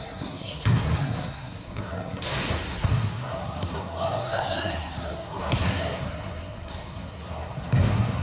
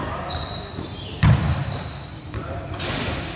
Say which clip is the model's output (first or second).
first